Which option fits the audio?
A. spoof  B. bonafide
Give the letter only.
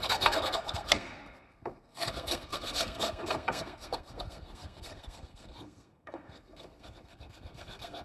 A